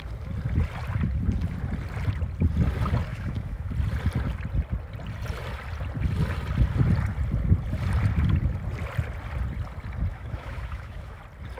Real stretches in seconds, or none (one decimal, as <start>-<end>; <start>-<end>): 0.0-3.1; 3.7-10.1; 11.2-11.6